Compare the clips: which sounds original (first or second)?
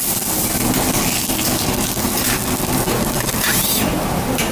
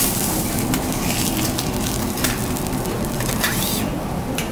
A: first